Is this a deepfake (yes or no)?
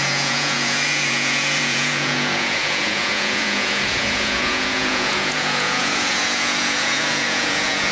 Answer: yes